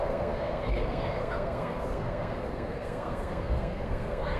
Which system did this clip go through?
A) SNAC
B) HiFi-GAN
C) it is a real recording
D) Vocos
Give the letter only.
A